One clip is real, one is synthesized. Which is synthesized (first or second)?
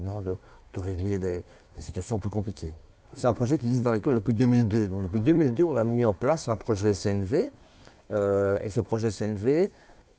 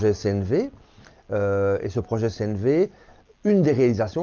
first